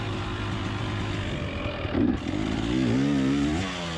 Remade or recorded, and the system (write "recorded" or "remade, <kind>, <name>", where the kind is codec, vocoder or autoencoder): recorded